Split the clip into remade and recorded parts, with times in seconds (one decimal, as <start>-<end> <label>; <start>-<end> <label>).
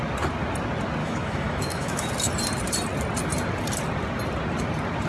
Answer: 0.0-1.0 recorded; 1.0-2.1 remade; 2.1-5.1 recorded